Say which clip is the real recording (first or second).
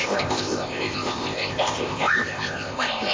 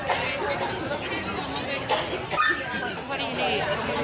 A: second